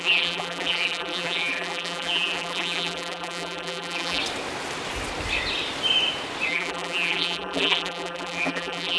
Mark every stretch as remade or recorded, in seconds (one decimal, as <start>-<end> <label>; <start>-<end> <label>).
0.0-4.2 remade; 4.2-6.5 recorded; 6.5-9.0 remade